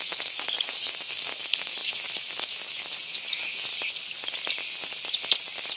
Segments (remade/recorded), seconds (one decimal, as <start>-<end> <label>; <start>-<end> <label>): 0.0-3.7 remade; 3.7-5.8 recorded